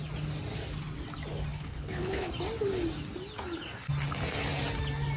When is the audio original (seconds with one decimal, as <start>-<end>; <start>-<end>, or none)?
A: 0.0-1.5; 2.3-5.2